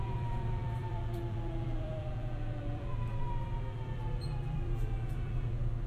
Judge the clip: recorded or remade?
remade